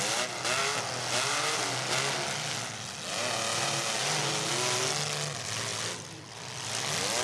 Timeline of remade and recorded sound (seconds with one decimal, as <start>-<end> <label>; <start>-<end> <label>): 0.0-7.2 recorded